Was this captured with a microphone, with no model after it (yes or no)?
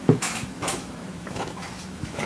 no